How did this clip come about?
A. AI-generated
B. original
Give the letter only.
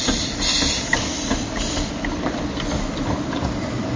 B